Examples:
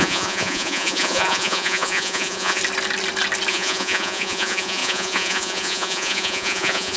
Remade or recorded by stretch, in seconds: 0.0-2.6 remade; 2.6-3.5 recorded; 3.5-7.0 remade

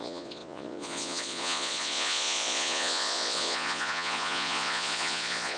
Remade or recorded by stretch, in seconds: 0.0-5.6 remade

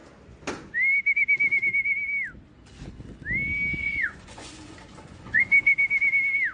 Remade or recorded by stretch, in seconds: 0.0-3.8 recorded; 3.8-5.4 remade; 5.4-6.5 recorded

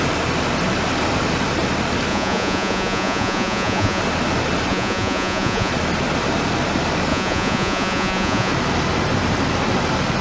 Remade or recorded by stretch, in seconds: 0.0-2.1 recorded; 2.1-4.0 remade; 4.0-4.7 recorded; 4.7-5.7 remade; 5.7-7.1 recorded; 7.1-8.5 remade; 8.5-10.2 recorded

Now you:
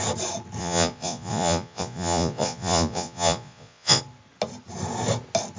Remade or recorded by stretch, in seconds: 0.0-0.6 recorded; 0.6-4.0 remade; 4.0-5.6 recorded